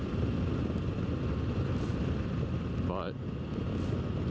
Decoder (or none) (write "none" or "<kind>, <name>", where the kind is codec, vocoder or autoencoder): vocoder, BigVGAN v2